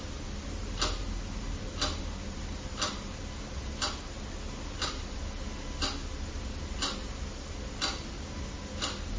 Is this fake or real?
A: real